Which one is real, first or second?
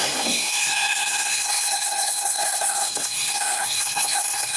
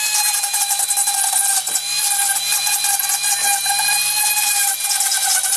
second